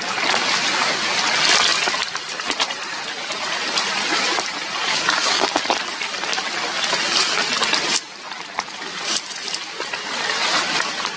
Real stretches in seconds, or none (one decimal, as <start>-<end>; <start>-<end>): 0.0-4.9; 5.6-11.2